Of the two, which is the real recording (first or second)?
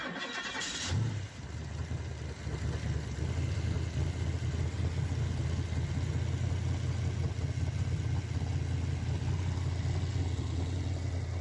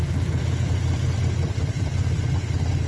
first